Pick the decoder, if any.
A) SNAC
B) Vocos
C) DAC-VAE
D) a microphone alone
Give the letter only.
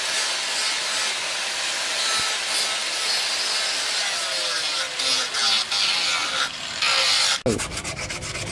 D